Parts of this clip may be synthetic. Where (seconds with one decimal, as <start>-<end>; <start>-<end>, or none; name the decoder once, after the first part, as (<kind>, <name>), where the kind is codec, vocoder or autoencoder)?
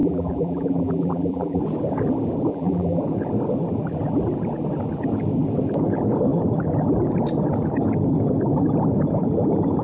0.0-1.6 (vocoder, BigVGAN v2); 2.5-3.0